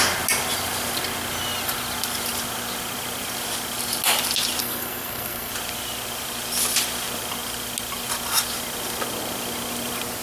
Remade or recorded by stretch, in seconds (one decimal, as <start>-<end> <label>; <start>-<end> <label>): 0.0-4.6 recorded; 4.6-5.5 remade; 5.5-10.2 recorded